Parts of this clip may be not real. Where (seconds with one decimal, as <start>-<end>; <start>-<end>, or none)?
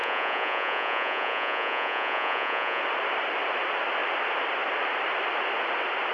0.0-2.8